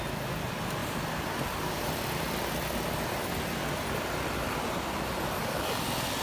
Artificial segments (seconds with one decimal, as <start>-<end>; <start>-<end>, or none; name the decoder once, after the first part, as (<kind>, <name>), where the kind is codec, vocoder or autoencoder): 0.8-1.4 (vocoder, BigVGAN v2)